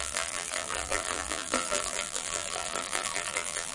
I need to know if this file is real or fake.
fake